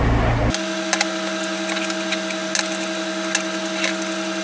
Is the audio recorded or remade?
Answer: recorded